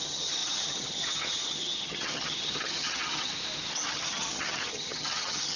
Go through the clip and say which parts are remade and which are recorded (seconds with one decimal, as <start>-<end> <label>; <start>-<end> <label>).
0.0-3.3 remade; 3.3-3.9 recorded; 3.9-5.6 remade